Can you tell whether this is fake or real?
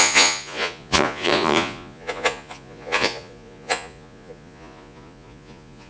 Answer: fake